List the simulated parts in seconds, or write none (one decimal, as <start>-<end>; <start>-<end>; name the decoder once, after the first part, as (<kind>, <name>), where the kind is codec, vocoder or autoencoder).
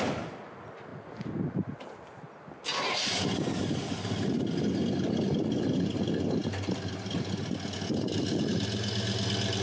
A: none